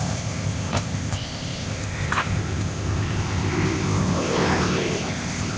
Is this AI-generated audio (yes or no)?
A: yes